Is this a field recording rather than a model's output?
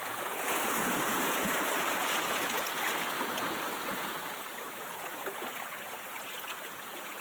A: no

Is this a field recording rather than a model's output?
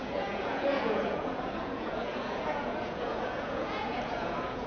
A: no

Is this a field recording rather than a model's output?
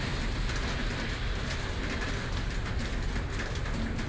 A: yes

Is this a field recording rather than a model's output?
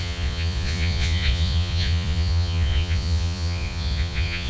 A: no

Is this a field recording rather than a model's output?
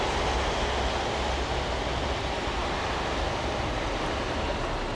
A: yes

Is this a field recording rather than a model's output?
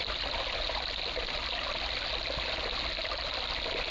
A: yes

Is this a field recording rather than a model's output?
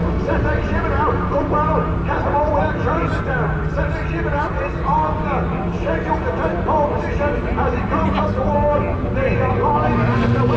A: yes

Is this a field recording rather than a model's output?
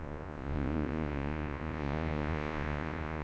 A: no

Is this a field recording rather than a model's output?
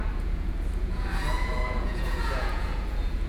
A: no